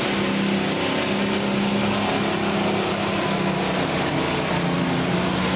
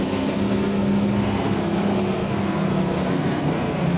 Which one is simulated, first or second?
second